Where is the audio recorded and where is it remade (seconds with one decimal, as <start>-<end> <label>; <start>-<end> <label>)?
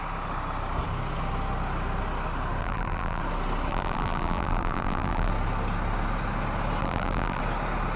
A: 0.0-2.6 recorded; 2.6-3.2 remade; 3.2-3.7 recorded; 3.7-5.3 remade; 5.3-6.8 recorded; 6.8-7.4 remade; 7.4-8.0 recorded